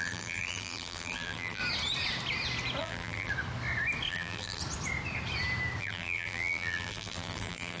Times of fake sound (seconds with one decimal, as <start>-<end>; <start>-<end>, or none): 0.0-1.6; 2.8-3.3; 4.1-4.6; 5.8-7.8